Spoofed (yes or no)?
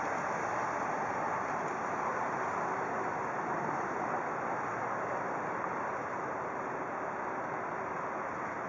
no